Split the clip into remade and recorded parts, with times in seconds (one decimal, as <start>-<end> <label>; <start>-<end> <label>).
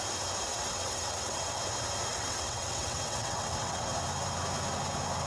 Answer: 0.0-0.5 recorded; 0.5-1.6 remade; 1.6-2.1 recorded; 2.1-3.9 remade; 3.9-5.3 recorded